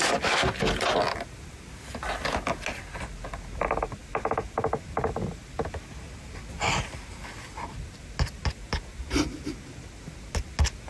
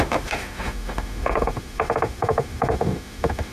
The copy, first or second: second